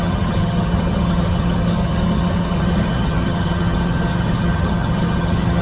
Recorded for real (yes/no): no